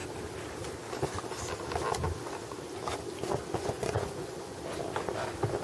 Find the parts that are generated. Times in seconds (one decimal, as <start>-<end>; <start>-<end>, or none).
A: 3.5-4.6